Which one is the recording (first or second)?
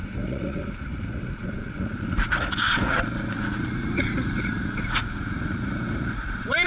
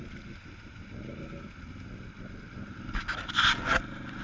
second